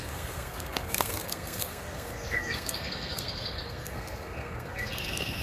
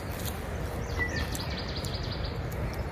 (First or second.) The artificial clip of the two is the first